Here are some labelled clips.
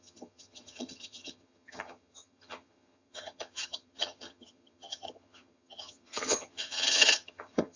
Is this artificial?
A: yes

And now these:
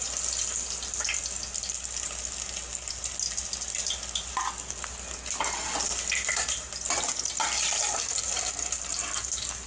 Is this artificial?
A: no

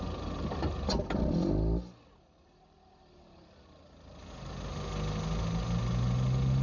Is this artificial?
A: no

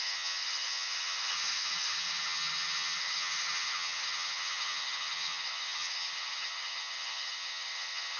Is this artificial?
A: yes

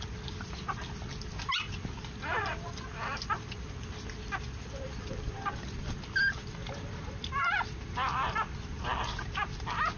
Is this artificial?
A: no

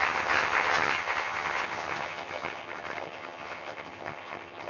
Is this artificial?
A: yes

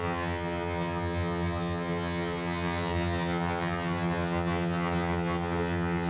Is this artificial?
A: yes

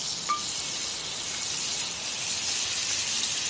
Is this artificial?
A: no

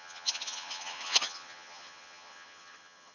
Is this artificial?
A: yes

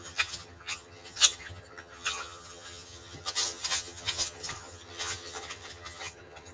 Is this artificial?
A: yes